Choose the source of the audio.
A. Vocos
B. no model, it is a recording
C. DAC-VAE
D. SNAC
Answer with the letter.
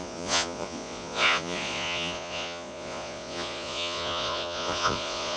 A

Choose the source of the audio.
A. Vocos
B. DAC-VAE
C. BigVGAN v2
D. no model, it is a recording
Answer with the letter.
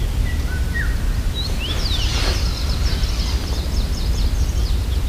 D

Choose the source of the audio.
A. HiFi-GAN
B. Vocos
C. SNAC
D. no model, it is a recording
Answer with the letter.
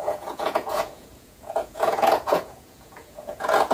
B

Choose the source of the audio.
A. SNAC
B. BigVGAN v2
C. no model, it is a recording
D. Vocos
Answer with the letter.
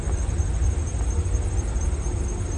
C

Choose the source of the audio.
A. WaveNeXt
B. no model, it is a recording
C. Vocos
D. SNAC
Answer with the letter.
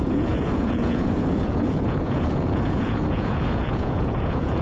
C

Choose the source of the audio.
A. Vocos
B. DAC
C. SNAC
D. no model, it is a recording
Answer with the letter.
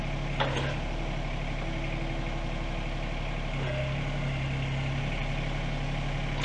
D